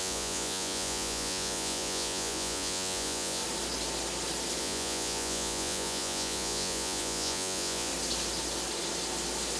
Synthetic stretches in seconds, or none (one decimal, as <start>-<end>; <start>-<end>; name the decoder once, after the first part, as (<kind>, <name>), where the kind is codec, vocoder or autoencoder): 0.0-3.4 (vocoder, Vocos); 4.6-7.9